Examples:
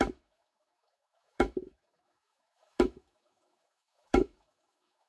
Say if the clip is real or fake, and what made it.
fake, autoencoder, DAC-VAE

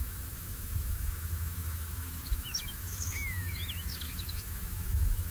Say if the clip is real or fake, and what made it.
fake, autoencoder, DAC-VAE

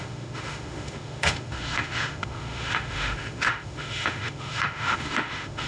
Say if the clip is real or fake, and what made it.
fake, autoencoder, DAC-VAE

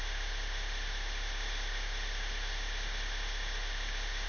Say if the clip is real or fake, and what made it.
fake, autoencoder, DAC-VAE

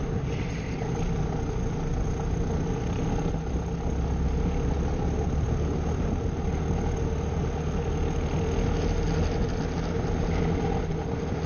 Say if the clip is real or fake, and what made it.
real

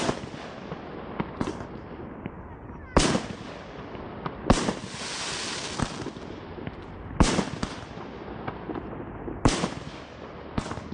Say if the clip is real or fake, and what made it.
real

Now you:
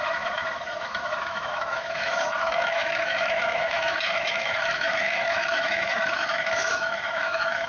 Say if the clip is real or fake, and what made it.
fake, autoencoder, DAC-VAE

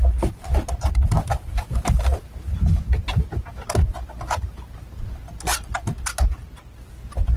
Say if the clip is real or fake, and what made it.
real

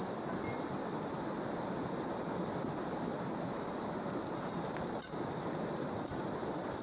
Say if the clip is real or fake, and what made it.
real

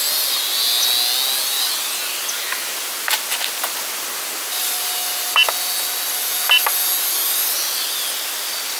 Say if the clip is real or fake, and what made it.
real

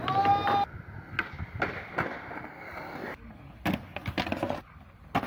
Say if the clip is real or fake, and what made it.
real